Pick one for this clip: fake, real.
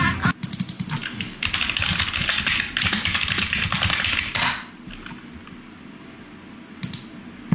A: real